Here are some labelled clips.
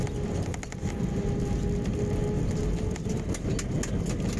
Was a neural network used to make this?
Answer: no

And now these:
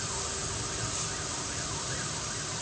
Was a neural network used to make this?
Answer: yes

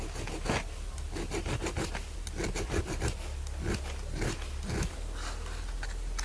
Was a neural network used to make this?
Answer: no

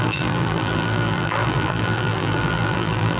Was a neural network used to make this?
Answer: yes